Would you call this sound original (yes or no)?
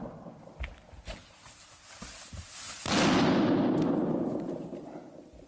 yes